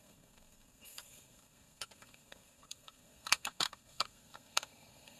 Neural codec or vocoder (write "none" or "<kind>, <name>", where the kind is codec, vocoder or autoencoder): codec, SNAC